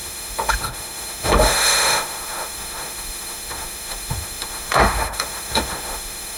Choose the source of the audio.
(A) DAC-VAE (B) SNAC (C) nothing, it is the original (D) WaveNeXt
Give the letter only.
A